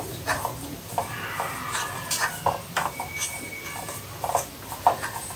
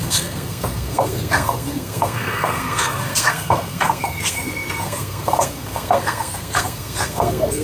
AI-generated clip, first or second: second